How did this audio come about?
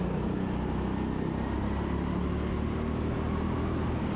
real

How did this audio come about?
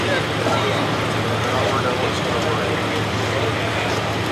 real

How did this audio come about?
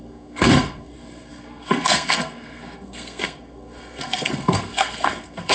fake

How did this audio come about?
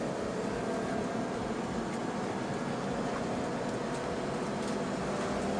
real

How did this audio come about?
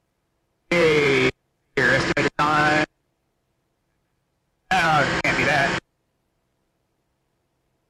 fake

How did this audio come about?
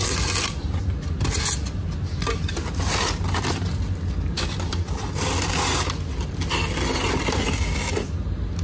real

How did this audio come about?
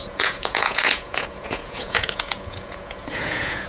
fake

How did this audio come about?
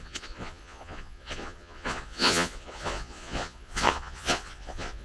fake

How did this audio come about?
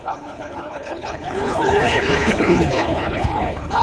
fake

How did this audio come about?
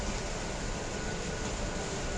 real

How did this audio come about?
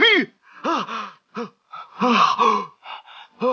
real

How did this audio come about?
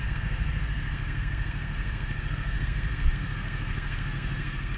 fake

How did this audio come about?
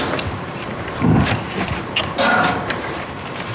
fake